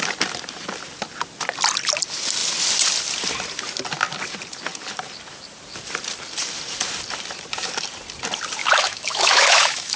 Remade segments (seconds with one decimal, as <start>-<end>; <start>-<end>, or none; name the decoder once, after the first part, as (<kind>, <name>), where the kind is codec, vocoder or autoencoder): 8.6-10.0 (autoencoder, DAC-VAE)